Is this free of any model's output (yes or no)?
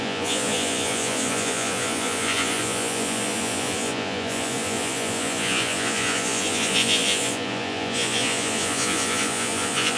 no